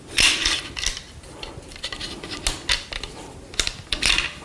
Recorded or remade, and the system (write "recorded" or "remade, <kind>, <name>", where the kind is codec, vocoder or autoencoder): recorded